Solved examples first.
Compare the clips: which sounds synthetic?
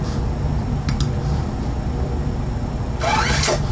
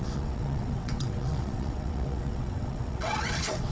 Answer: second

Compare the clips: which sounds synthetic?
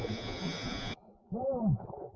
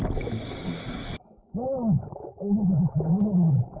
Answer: first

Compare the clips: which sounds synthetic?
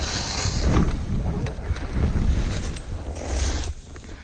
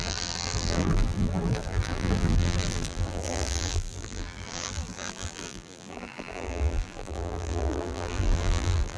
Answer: second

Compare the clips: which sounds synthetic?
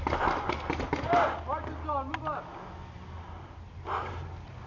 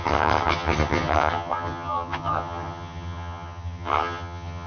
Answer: second